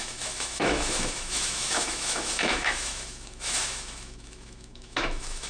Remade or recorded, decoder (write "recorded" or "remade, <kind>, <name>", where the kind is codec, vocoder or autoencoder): remade, autoencoder, DAC-VAE